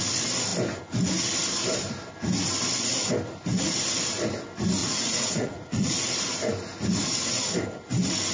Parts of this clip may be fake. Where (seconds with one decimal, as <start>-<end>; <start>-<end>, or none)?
4.8-5.9